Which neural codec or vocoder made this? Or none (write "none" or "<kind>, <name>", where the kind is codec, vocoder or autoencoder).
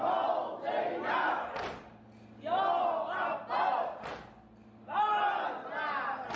none